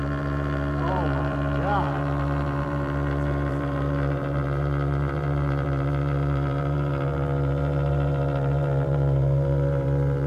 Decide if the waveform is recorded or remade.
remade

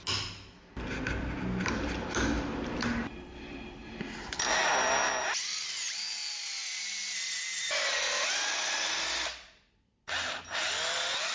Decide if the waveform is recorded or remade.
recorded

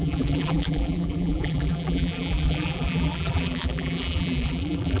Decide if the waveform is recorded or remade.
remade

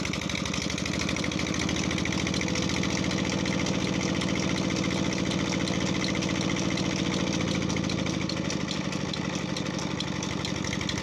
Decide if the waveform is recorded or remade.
recorded